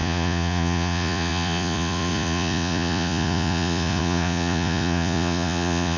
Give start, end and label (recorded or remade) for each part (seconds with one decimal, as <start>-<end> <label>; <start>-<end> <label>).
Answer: 0.0-6.0 remade